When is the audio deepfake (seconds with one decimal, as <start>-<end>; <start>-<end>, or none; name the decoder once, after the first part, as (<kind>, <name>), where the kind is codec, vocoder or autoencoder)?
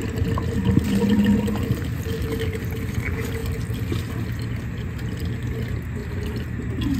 none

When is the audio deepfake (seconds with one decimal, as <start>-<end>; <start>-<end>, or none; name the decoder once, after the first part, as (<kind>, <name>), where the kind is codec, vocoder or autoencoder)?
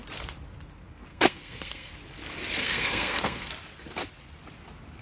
1.1-1.9 (codec, SNAC); 2.6-3.5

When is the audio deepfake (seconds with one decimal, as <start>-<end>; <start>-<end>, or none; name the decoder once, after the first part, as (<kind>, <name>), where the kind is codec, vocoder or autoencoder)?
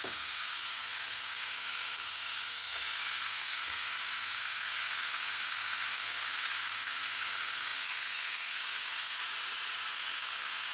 0.0-9.2 (codec, SNAC); 9.9-10.7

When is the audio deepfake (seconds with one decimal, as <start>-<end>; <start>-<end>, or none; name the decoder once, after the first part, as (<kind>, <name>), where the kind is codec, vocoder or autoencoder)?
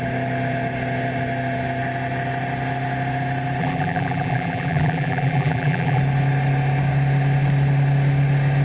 3.6-6.0 (vocoder, BigVGAN v2)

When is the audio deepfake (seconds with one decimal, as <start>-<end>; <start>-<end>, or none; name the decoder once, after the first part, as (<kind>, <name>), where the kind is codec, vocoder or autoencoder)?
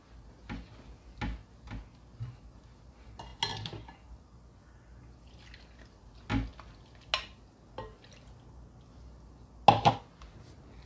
none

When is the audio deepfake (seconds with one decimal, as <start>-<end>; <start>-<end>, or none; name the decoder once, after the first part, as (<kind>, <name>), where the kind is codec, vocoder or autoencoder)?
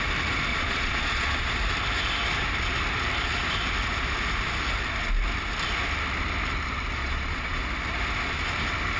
0.5-1.5 (vocoder, Vocos); 7.0-7.6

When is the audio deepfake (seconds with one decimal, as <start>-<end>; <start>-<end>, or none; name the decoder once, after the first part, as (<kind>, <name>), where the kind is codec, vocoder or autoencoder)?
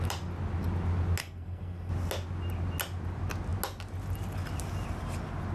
1.2-1.9 (codec, SNAC)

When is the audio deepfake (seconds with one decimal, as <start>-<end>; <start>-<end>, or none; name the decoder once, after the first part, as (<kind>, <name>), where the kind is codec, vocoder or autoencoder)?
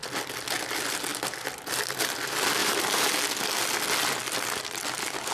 2.6-3.1 (vocoder, BigVGAN v2)